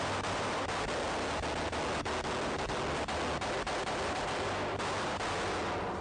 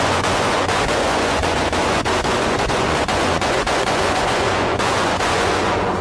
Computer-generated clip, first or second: second